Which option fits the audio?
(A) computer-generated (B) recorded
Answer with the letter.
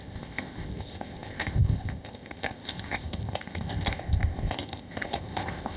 A